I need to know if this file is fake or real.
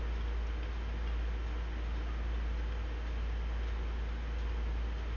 real